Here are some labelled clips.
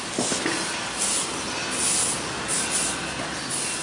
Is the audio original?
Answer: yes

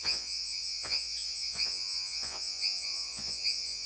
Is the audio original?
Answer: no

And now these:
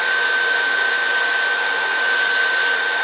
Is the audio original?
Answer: yes